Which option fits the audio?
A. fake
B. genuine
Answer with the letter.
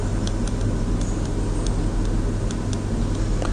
B